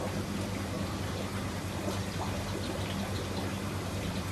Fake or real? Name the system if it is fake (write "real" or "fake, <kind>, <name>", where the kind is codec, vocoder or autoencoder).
real